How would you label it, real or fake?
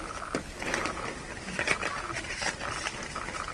real